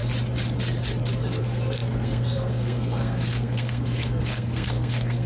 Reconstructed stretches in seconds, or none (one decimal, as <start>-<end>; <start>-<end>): 1.4-5.3